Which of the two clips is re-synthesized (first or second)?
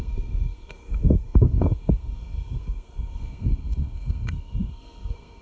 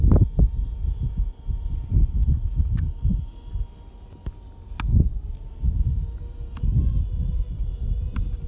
first